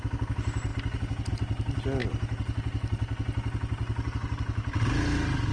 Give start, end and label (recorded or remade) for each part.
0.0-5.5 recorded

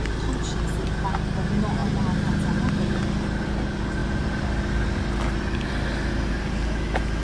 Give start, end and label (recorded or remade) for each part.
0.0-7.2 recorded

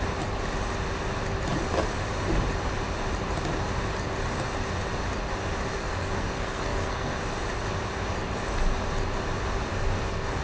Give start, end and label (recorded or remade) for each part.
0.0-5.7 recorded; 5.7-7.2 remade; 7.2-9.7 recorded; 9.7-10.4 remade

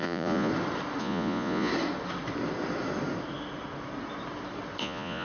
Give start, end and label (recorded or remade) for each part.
0.0-0.5 remade; 0.5-1.0 recorded; 1.0-1.7 remade; 1.7-4.8 recorded; 4.8-5.2 remade

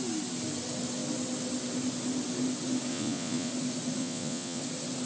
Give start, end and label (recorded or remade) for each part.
0.0-2.9 recorded; 2.9-3.5 remade; 3.5-4.0 recorded; 4.0-4.6 remade; 4.6-5.1 recorded

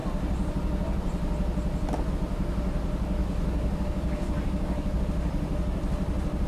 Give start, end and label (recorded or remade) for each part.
0.0-3.2 recorded; 3.2-5.0 remade; 5.0-6.5 recorded

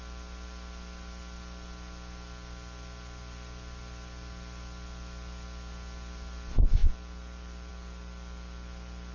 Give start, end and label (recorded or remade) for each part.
0.0-9.1 recorded